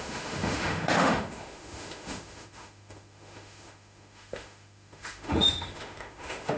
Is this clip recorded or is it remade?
remade